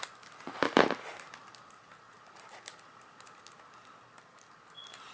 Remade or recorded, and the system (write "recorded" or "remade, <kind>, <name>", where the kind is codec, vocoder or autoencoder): recorded